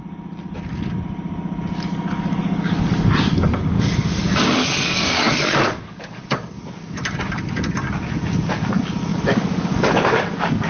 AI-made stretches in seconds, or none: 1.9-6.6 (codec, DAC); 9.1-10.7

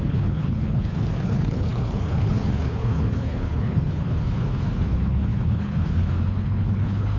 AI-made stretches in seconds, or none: 0.0-7.2 (codec, HILCodec)

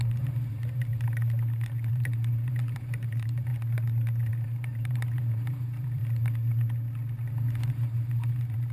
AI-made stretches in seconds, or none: 0.0-0.9 (vocoder, BigVGAN v2); 1.9-3.5; 4.3-6.0; 7.7-8.7